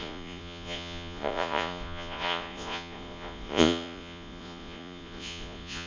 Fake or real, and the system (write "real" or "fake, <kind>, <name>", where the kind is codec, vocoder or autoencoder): fake, vocoder, Vocos